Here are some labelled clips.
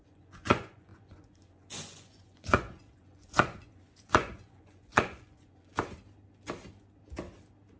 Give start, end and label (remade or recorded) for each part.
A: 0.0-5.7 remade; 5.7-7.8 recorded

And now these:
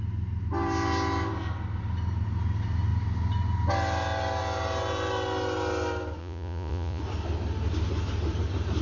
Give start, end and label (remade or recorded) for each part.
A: 0.0-6.2 recorded; 6.2-7.0 remade; 7.0-8.8 recorded

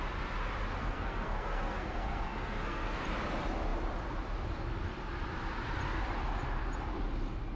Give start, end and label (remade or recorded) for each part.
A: 0.0-0.8 recorded; 0.8-3.0 remade; 3.0-7.6 recorded

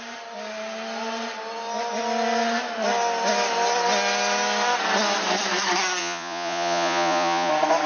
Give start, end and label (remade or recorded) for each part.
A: 0.0-6.0 recorded; 6.0-7.5 remade; 7.5-7.9 recorded

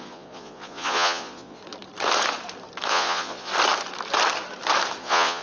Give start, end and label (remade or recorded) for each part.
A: 0.0-1.6 remade; 1.6-2.9 recorded; 2.9-3.5 remade; 3.5-5.0 recorded; 5.0-5.4 remade

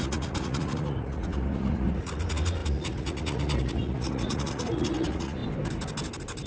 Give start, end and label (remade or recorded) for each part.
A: 0.0-5.4 remade; 5.4-6.5 recorded

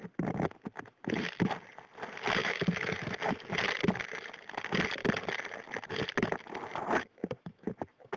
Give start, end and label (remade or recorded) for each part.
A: 0.0-2.4 recorded; 2.4-3.4 remade; 3.4-7.0 recorded; 7.0-8.2 remade

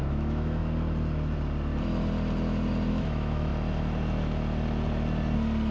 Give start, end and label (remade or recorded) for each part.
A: 0.0-0.6 remade; 0.6-2.9 recorded; 2.9-3.5 remade; 3.5-5.7 recorded